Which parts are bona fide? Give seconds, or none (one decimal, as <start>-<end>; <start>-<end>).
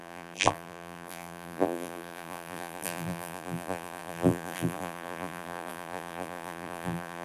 none